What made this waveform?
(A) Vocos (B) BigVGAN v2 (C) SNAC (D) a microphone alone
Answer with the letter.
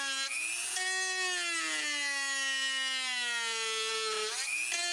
D